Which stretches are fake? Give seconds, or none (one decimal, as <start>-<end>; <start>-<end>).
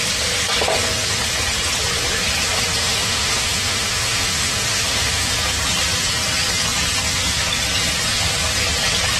2.8-5.2